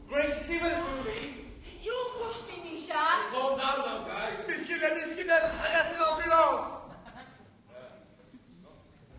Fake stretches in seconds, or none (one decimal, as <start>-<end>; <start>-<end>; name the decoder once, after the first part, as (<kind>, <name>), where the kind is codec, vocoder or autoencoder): 0.8-2.5 (autoencoder, DAC-VAE); 5.2-6.2